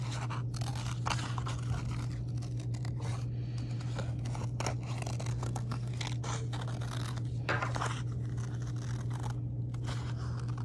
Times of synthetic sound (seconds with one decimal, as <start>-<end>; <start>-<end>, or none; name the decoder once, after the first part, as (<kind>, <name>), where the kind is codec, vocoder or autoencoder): 5.3-5.9 (codec, SNAC)

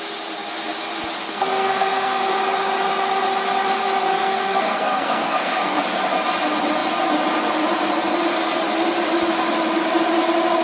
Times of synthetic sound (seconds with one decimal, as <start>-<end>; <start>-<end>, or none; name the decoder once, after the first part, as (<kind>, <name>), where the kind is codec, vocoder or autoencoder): 1.2-2.3 (codec, SNAC); 4.2-5.8

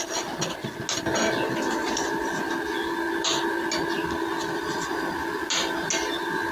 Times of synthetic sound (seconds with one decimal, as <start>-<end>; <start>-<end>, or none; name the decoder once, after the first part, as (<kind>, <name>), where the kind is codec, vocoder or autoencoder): none

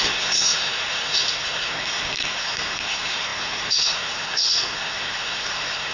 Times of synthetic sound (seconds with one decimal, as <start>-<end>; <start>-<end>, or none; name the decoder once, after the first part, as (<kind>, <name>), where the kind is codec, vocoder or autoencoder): 0.0-5.9 (codec, SNAC)